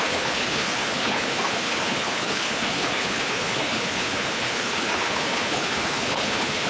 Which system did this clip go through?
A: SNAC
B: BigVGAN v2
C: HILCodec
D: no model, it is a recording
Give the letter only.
C